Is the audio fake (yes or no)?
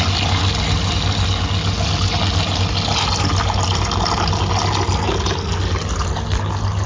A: no